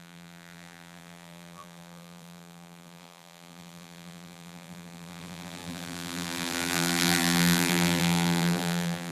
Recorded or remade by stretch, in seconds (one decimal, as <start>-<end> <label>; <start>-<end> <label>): 0.0-9.1 remade